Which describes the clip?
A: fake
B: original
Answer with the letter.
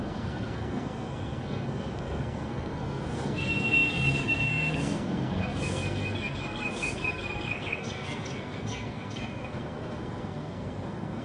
A